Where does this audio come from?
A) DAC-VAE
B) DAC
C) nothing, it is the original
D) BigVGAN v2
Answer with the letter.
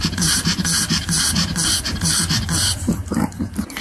D